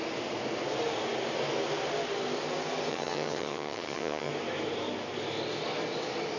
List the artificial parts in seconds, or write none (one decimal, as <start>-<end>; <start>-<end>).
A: 2.9-4.3

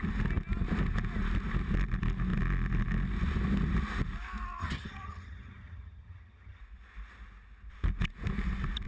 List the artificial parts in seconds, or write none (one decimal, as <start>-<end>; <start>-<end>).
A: 4.6-6.6